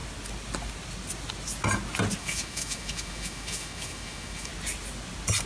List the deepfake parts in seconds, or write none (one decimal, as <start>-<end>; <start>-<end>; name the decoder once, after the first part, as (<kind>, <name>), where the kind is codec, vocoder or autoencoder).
2.2-4.5 (autoencoder, DAC-VAE)